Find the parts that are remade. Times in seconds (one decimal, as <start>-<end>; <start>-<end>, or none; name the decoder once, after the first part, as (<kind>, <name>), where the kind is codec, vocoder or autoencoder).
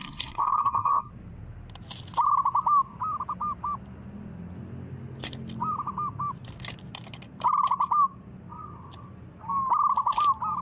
0.0-1.1 (codec, SNAC)